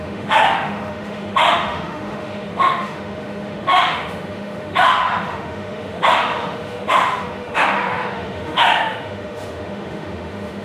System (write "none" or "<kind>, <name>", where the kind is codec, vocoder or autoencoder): autoencoder, DAC-VAE